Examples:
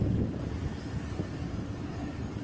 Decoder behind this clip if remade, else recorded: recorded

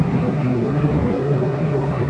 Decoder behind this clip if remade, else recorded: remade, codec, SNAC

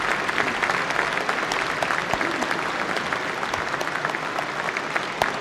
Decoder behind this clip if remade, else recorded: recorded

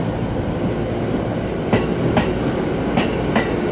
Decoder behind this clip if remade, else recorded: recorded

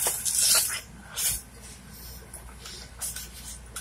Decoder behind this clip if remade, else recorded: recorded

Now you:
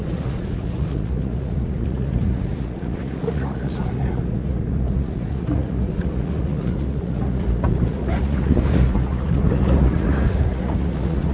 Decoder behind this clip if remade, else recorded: remade, vocoder, Vocos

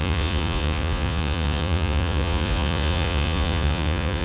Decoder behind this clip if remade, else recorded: remade, vocoder, Vocos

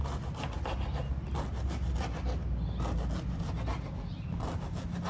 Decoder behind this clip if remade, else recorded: recorded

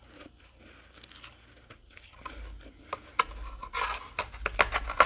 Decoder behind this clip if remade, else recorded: recorded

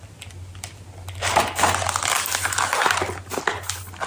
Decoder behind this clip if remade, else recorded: recorded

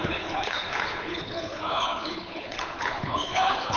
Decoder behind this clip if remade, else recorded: remade, codec, HILCodec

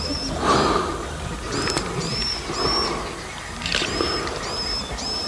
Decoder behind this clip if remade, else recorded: recorded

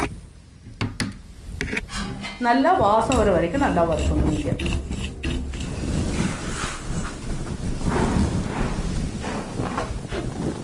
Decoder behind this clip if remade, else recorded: recorded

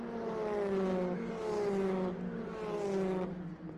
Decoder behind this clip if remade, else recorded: recorded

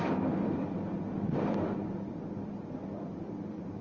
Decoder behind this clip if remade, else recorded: remade, vocoder, BigVGAN v2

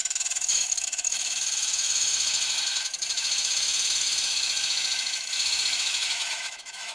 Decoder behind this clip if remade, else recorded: remade, autoencoder, DAC-VAE